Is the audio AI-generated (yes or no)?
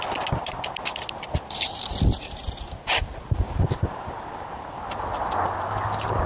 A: no